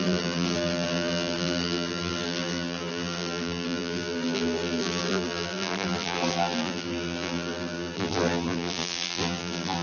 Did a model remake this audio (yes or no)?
yes